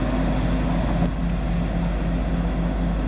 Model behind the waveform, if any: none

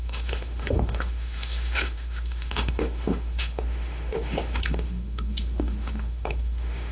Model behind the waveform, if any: autoencoder, DAC-VAE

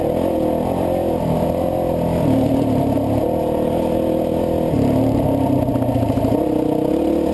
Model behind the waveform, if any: none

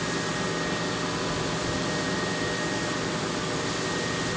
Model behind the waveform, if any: none